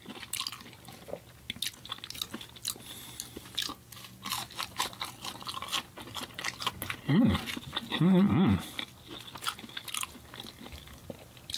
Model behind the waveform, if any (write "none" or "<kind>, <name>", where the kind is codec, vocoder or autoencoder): none